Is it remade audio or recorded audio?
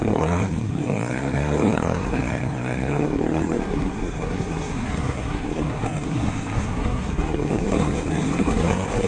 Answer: remade